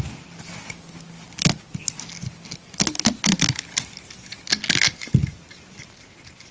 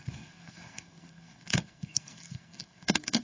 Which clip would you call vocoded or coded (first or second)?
second